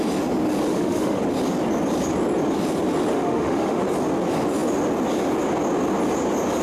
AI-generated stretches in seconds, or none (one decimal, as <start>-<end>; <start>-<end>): 0.7-1.2; 3.1-3.8